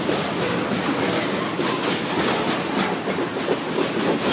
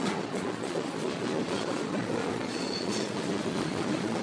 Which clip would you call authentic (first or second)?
first